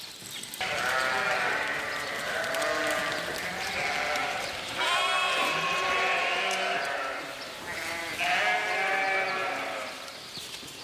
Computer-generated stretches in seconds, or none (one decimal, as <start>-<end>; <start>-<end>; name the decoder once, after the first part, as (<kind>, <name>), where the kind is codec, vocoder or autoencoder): 4.2-5.0 (vocoder, BigVGAN v2)